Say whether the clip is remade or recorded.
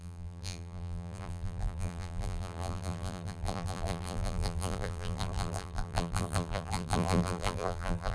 remade